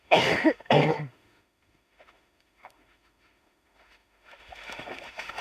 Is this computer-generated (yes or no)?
yes